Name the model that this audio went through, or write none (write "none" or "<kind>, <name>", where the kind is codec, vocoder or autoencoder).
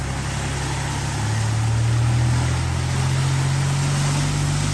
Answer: none